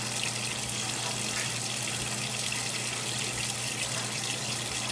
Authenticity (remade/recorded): recorded